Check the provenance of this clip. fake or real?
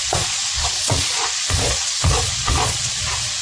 fake